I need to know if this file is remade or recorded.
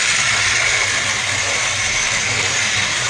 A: recorded